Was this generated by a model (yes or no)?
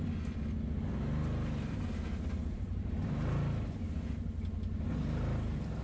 no